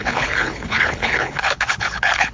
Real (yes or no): no